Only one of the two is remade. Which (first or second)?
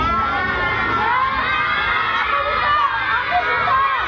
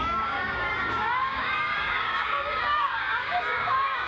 second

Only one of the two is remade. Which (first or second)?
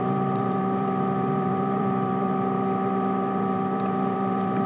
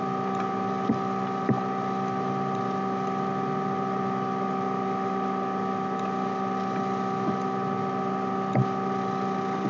first